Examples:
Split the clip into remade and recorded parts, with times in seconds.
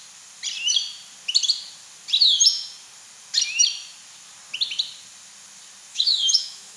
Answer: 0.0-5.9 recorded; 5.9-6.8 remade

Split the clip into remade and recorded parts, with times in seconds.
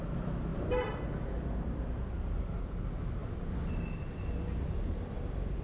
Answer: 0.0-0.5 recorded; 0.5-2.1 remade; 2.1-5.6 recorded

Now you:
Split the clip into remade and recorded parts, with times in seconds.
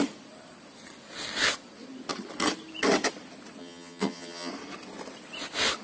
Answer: 0.0-3.6 recorded; 3.6-4.5 remade; 4.5-5.8 recorded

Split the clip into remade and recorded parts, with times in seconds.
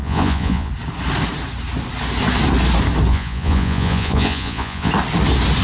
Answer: 0.0-0.7 remade; 0.7-3.1 recorded; 3.1-4.9 remade; 4.9-5.6 recorded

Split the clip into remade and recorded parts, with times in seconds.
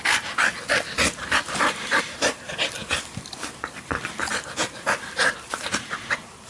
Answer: 0.0-6.5 remade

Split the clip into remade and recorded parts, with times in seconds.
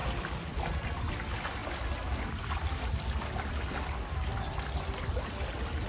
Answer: 0.0-5.9 recorded